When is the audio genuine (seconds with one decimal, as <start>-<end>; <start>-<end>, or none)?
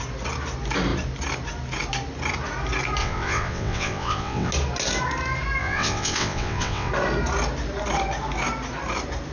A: 0.0-3.0; 4.5-5.6; 6.9-9.3